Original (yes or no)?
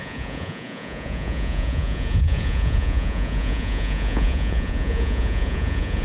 no